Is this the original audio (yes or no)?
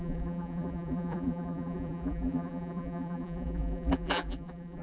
no